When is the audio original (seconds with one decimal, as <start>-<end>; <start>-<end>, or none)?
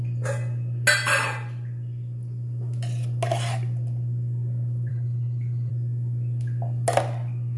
0.0-4.9; 5.7-7.6